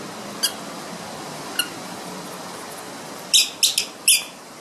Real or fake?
real